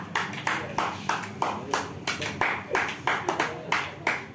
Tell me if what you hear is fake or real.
real